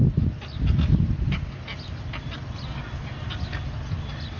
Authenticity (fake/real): real